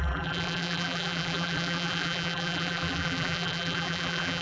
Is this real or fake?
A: fake